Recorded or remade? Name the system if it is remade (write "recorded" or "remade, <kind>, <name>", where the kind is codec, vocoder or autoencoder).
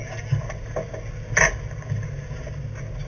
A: recorded